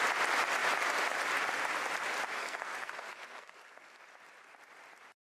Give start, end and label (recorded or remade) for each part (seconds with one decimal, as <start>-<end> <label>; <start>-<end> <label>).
0.0-2.4 recorded; 2.4-4.0 remade; 4.0-5.2 recorded